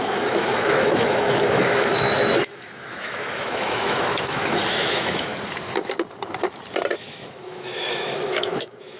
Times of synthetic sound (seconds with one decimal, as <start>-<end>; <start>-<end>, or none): 0.0-5.3; 7.0-9.0